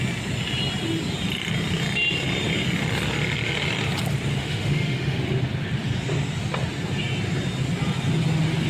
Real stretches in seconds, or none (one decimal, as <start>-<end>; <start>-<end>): 0.0-4.4; 5.2-8.7

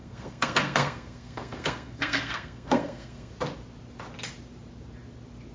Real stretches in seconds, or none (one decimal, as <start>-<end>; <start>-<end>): 3.3-5.5

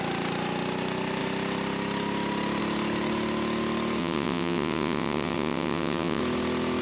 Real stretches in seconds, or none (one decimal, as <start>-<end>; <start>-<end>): 0.0-4.0; 6.2-6.8

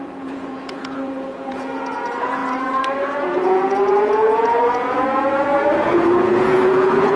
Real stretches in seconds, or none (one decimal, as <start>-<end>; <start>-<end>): none

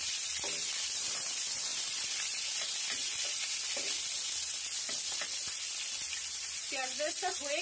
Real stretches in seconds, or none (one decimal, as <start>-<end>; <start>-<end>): 0.0-7.6